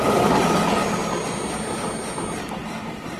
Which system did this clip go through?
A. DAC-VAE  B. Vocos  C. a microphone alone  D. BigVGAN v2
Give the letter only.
C